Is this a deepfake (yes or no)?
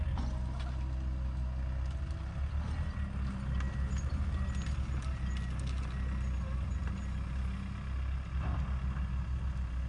no